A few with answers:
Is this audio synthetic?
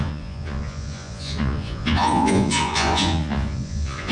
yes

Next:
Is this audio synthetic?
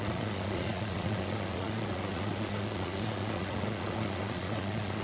yes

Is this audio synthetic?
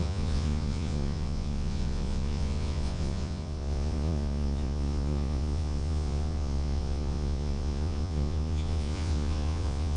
yes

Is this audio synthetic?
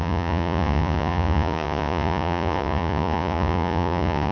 yes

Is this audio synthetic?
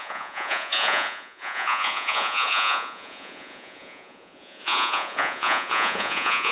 yes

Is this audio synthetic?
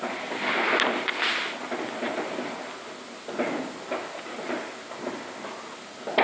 no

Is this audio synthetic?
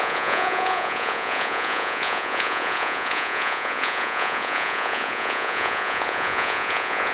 yes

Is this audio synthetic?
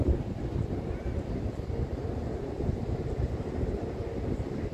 no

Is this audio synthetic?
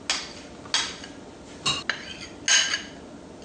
no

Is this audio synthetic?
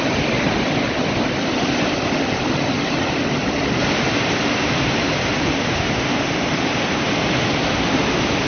no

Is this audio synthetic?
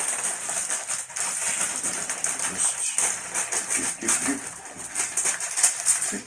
no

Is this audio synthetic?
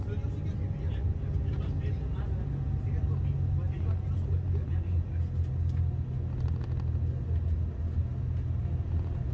no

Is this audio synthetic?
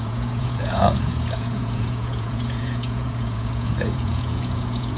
yes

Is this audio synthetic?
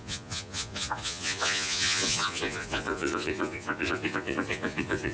yes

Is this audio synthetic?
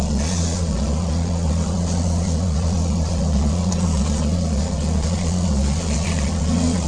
yes